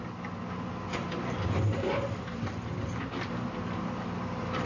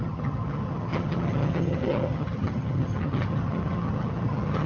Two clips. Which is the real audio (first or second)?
first